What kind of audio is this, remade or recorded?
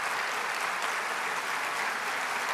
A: recorded